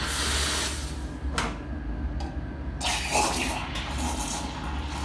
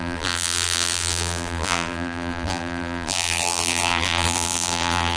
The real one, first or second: first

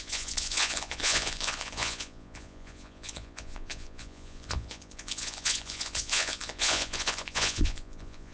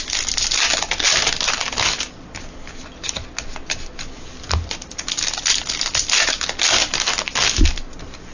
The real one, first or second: second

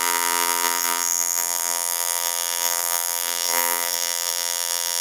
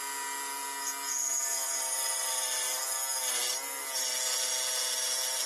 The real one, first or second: second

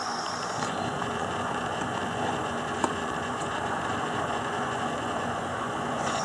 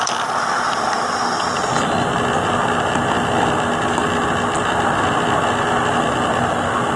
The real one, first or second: second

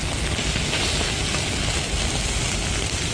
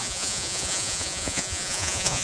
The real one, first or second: first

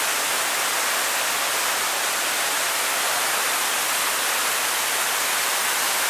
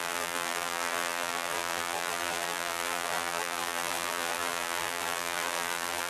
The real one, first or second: first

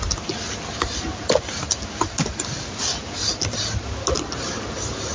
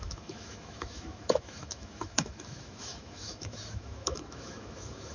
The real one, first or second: first